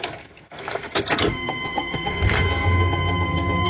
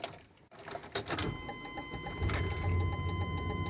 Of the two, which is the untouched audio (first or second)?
second